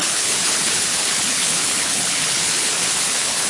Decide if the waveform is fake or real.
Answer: fake